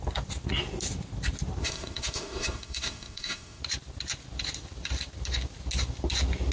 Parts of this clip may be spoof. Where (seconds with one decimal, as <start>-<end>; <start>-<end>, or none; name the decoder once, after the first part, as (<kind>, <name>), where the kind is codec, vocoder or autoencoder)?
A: 1.6-3.6 (autoencoder, DAC-VAE)